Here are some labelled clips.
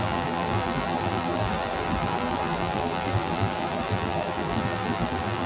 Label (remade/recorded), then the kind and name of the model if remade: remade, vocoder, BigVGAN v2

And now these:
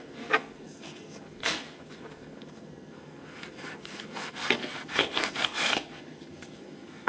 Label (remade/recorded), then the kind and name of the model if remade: remade, codec, SNAC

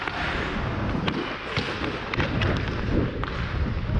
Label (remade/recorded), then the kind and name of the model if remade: recorded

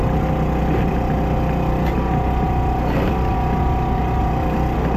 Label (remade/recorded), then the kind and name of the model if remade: recorded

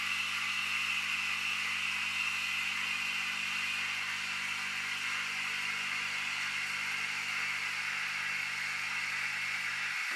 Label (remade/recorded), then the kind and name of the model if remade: recorded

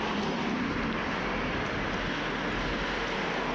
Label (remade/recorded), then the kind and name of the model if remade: recorded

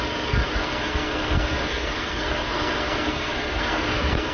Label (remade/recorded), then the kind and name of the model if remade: remade, codec, SNAC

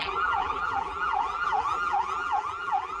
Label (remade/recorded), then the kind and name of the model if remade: remade, vocoder, BigVGAN v2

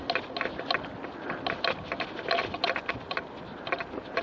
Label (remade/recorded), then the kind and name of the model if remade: recorded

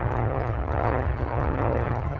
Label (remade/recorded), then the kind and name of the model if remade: remade, vocoder, HiFi-GAN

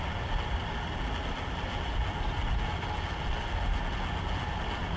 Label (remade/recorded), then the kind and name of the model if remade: recorded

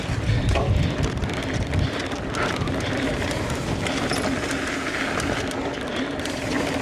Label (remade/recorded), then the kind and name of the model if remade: recorded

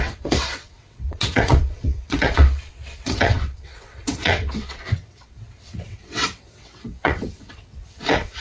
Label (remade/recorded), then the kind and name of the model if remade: remade, vocoder, WaveNeXt